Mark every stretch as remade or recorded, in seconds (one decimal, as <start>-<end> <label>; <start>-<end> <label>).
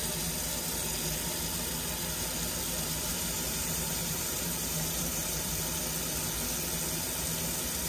0.0-3.1 recorded; 3.1-5.5 remade; 5.5-7.9 recorded